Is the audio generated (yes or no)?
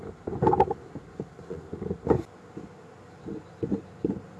no